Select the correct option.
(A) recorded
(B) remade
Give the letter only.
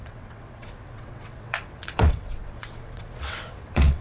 B